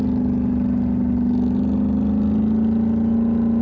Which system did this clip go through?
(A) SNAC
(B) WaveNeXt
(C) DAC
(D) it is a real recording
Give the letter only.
D